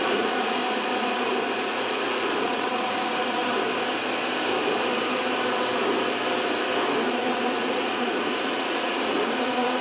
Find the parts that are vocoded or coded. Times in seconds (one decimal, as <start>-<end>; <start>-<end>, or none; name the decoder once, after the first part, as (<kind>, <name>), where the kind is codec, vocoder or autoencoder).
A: 0.0-0.6 (vocoder, Vocos); 1.6-3.4; 7.0-9.8